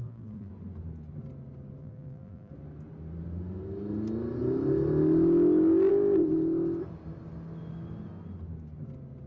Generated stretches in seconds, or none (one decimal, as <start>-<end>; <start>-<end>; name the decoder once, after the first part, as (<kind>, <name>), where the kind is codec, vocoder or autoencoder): 0.0-0.5 (vocoder, BigVGAN v2); 1.8-2.5